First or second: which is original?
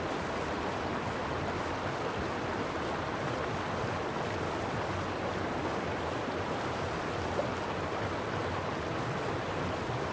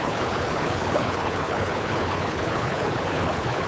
first